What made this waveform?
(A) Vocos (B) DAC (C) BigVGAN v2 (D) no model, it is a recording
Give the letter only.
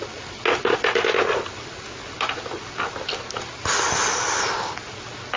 D